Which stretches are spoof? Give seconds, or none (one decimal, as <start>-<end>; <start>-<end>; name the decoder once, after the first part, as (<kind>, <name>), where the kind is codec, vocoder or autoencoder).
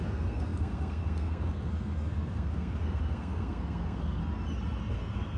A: 0.0-4.2 (codec, SNAC); 4.9-5.4